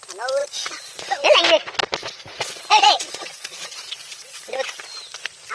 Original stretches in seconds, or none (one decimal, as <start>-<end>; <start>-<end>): 0.0-0.4; 1.4-2.0; 4.8-5.5